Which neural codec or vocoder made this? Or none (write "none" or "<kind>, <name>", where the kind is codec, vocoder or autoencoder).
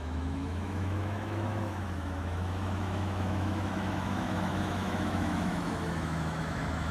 autoencoder, DAC-VAE